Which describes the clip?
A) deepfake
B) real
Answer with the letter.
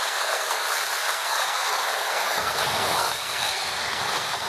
A